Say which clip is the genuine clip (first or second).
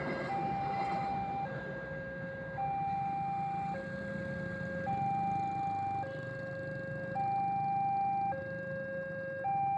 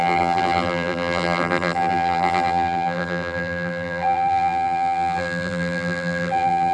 first